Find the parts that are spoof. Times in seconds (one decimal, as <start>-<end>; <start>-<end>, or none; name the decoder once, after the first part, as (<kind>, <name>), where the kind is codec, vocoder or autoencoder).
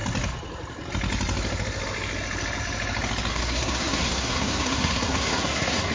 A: 3.3-5.9 (codec, SNAC)